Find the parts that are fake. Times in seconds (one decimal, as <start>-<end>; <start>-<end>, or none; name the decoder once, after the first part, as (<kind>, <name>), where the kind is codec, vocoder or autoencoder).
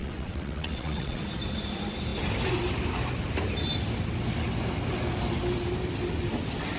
0.0-1.2 (vocoder, WaveNeXt)